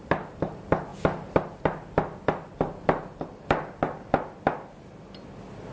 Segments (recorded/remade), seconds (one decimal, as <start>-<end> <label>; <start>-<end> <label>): 0.0-5.7 recorded